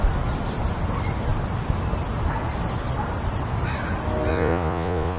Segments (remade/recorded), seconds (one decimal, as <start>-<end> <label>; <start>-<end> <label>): 0.0-4.3 recorded; 4.3-5.2 remade